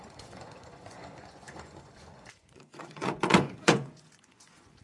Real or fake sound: fake